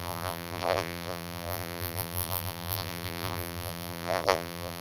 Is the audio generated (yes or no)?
yes